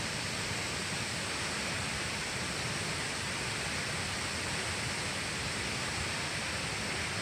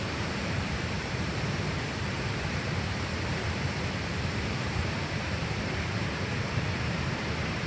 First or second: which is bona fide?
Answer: first